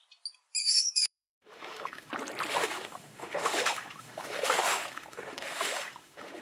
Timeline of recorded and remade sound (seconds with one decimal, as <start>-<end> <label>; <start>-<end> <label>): 0.0-0.6 recorded; 0.6-2.1 remade; 2.1-2.5 recorded; 2.5-6.4 remade